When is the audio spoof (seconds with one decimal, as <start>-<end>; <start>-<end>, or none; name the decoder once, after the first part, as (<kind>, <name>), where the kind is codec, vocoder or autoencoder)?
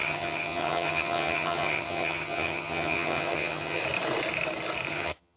0.0-3.8 (vocoder, HiFi-GAN); 4.9-5.4